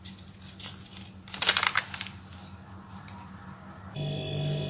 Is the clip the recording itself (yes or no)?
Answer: yes